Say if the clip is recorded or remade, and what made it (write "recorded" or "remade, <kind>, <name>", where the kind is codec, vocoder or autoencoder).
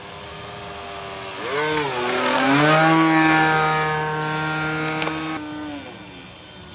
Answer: recorded